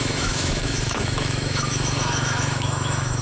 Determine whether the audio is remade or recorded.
remade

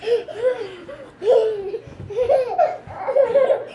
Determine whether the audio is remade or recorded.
recorded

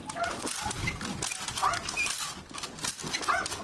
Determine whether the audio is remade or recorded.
recorded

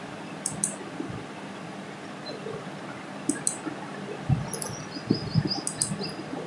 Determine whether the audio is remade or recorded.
recorded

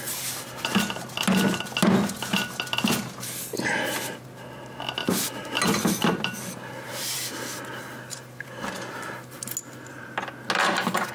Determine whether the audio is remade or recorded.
recorded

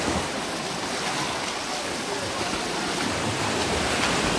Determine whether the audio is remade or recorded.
recorded